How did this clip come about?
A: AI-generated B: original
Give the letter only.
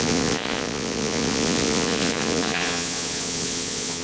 A